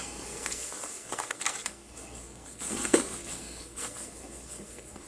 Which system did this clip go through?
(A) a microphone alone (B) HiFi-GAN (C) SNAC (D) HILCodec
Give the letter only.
C